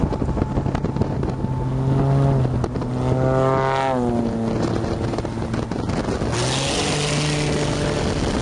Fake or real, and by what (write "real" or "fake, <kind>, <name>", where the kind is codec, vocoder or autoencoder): real